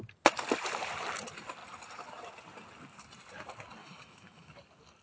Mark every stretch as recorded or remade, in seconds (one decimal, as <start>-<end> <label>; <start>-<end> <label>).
0.0-3.8 recorded; 3.8-4.5 remade; 4.5-5.0 recorded